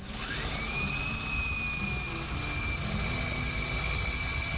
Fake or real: real